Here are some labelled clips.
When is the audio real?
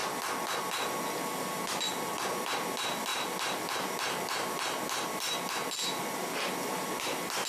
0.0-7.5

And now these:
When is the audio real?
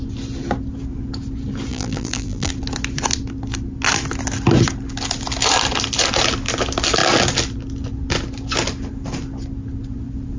0.0-1.7; 2.5-10.4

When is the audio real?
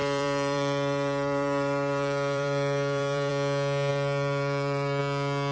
3.3-3.9; 5.0-5.5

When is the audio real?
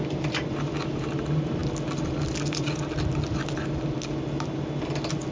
0.0-5.3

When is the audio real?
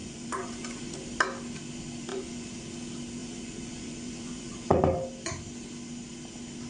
0.8-2.1; 2.6-3.2; 4.8-6.7